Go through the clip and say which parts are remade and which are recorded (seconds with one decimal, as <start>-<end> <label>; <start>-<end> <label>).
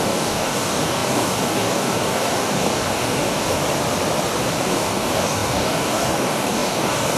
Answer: 0.0-3.6 remade; 3.6-4.5 recorded; 4.5-7.2 remade